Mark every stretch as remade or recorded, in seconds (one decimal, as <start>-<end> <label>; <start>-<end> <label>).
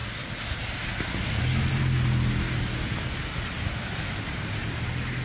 0.0-5.2 recorded